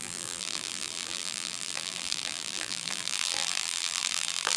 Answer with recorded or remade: remade